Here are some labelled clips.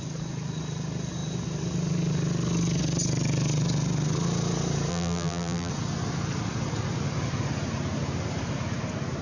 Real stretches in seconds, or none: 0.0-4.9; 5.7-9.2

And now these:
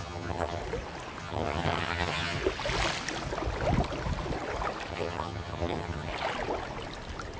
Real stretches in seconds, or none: 0.6-1.2; 2.4-4.9; 6.1-7.4

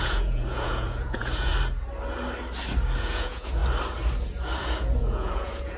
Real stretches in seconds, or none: 1.5-3.0; 3.6-4.6

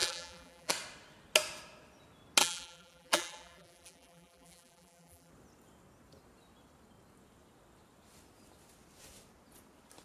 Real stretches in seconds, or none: 0.7-2.4; 5.3-10.0

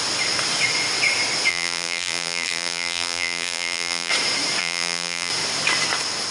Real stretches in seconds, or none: 0.0-1.5; 4.1-4.6; 5.3-6.3

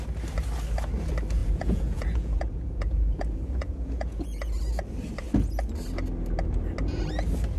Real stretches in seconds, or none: 0.0-1.4; 4.6-7.6

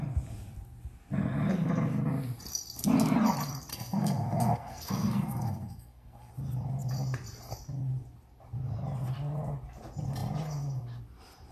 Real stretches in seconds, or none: 0.0-3.7; 6.3-11.5

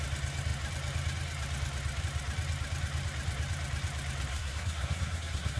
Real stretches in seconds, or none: 0.0-4.3